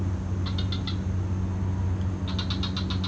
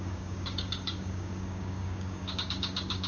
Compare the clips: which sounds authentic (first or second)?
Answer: first